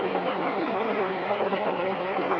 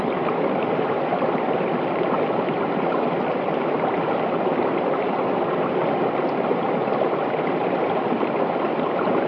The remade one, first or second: first